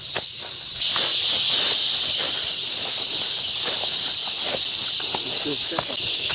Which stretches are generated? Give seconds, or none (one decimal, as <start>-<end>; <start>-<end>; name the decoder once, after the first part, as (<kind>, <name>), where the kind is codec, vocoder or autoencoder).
5.5-6.3 (codec, DAC)